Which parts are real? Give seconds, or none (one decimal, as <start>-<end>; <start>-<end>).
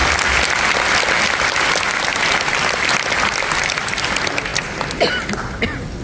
0.0-6.0